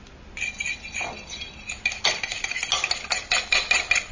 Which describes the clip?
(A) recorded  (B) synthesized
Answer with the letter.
A